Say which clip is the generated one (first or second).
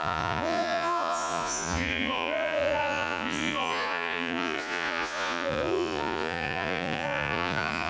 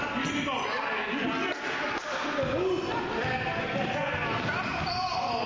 first